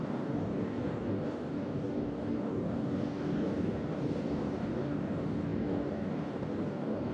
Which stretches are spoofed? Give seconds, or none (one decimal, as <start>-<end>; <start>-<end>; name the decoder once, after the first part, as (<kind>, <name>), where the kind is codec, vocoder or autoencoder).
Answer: 0.0-7.1 (codec, DAC)